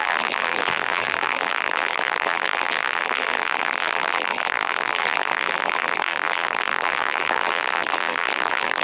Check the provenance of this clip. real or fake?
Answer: fake